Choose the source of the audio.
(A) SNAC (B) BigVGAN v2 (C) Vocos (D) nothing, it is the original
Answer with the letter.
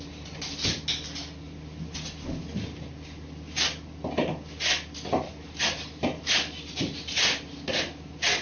D